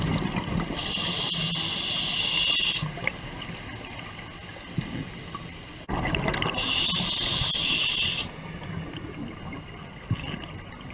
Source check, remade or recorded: recorded